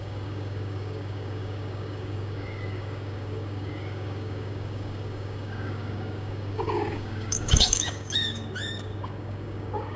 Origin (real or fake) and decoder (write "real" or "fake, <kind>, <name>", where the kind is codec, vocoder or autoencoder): fake, codec, DAC